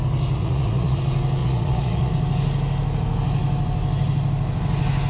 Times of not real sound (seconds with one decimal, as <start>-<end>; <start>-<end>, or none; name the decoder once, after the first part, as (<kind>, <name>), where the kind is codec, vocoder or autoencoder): 0.4-1.0 (vocoder, Vocos); 1.4-2.1